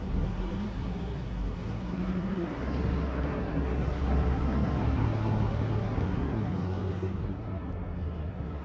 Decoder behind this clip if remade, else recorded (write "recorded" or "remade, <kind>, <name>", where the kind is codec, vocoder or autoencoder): remade, codec, SNAC